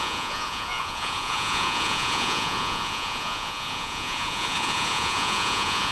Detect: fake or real fake